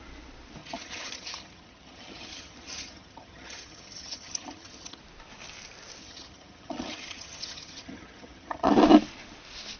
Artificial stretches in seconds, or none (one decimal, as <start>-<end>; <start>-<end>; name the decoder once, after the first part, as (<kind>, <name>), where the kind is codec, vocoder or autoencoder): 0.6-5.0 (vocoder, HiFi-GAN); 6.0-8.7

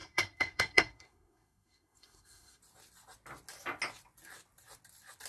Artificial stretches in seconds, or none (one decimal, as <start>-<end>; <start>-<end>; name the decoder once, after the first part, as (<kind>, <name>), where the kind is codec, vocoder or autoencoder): 0.0-2.6 (codec, SNAC)

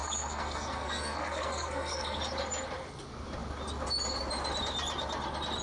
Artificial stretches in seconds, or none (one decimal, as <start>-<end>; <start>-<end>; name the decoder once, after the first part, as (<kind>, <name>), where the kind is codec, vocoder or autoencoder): 0.0-2.2 (codec, SNAC)

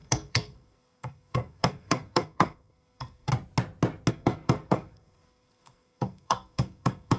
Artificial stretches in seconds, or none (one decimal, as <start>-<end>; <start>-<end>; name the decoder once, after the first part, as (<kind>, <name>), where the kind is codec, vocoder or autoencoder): 0.0-3.3 (codec, SNAC); 4.1-7.2